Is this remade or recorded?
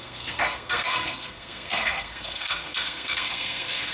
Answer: remade